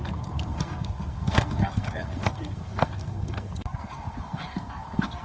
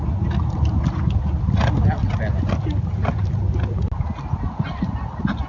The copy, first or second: first